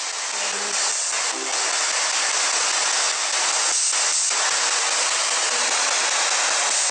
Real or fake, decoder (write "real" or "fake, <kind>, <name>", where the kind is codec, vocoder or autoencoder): real